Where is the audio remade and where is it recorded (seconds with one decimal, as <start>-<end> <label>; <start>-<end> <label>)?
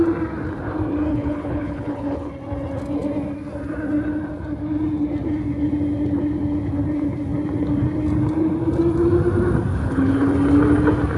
0.0-1.1 recorded; 1.1-2.3 remade; 2.3-9.7 recorded; 9.7-10.3 remade; 10.3-11.2 recorded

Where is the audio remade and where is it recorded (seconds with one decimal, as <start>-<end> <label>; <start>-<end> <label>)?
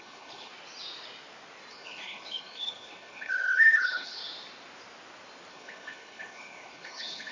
0.0-0.5 remade; 0.5-1.7 recorded; 1.7-4.2 remade; 4.2-5.5 recorded; 5.5-7.3 remade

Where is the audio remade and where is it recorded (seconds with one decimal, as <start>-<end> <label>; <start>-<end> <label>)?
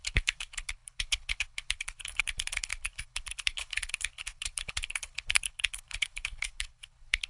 0.0-7.3 remade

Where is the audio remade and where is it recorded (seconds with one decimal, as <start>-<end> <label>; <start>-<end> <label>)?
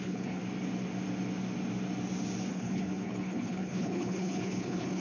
0.0-0.4 remade; 0.4-2.5 recorded; 2.5-5.0 remade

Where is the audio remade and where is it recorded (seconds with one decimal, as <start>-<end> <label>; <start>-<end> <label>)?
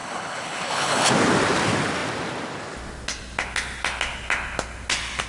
0.0-1.1 remade; 1.1-5.3 recorded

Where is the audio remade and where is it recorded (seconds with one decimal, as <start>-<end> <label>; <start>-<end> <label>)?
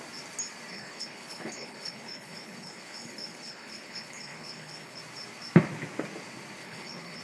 0.0-0.7 recorded; 0.7-5.0 remade; 5.0-6.6 recorded; 6.6-7.2 remade